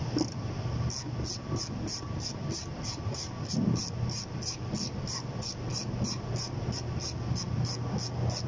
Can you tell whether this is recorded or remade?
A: recorded